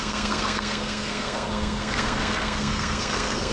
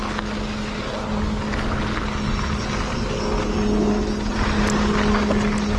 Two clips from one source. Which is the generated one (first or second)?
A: first